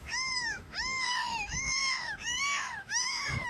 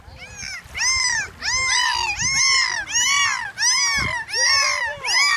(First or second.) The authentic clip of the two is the second